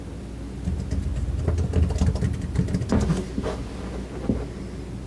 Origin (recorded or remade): recorded